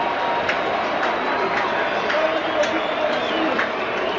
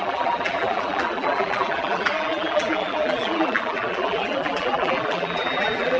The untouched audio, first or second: first